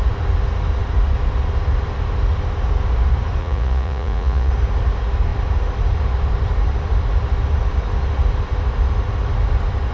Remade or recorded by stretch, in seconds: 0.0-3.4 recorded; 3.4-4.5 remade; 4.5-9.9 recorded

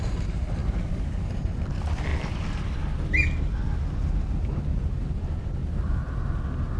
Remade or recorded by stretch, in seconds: 0.0-0.6 recorded; 0.6-1.3 remade; 1.3-6.8 recorded

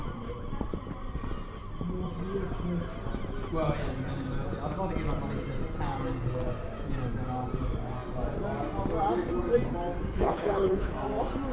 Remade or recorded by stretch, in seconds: 0.0-10.1 recorded; 10.1-10.9 remade; 10.9-11.5 recorded

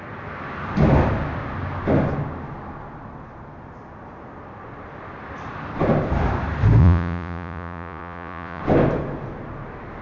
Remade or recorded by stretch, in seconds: 0.0-6.8 recorded; 6.8-8.6 remade; 8.6-10.0 recorded

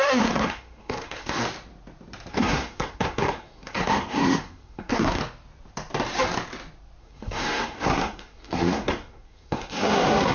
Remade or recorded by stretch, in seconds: 0.0-1.4 remade; 1.4-2.3 recorded; 2.3-5.2 remade; 5.2-7.0 recorded; 7.0-10.3 remade

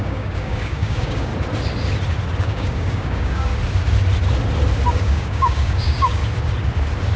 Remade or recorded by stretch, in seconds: 0.0-1.3 remade; 1.3-2.4 recorded; 2.4-3.5 remade; 3.5-4.9 recorded; 4.9-6.2 remade; 6.2-7.2 recorded